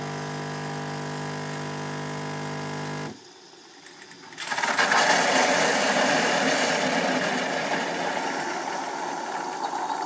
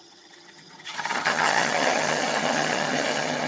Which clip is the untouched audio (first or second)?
first